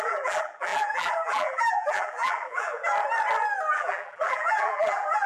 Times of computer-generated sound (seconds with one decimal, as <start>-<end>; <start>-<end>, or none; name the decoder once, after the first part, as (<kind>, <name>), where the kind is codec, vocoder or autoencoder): 0.0-2.8 (vocoder, BigVGAN v2); 3.7-5.3